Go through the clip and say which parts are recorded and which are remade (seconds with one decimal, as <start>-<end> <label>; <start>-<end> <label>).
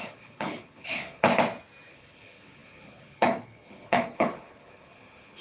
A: 0.0-1.3 remade; 1.3-1.9 recorded; 1.9-5.4 remade